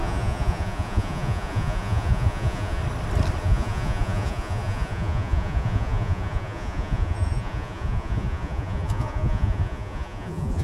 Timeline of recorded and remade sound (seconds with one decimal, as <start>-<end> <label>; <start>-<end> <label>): 0.0-2.8 remade; 2.8-3.4 recorded; 3.4-10.6 remade